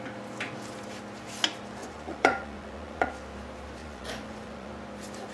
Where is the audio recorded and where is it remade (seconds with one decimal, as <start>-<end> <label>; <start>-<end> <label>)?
0.0-1.8 recorded; 1.8-3.1 remade; 3.1-3.8 recorded; 3.8-4.7 remade; 4.7-5.3 recorded